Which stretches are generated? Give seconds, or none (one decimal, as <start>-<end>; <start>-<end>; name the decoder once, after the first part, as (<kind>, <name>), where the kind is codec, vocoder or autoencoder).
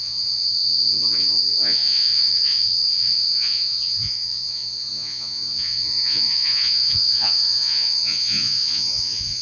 0.0-9.4 (vocoder, Vocos)